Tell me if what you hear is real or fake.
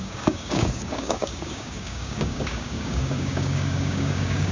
fake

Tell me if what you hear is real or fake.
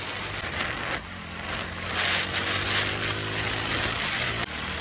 real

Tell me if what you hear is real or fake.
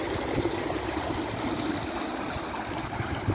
real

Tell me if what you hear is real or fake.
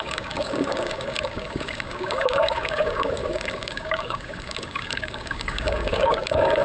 fake